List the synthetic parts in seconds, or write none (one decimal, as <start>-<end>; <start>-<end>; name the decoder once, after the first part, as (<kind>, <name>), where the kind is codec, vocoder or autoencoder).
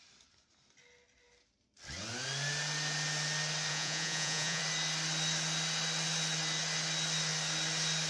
3.7-4.6 (vocoder, Vocos)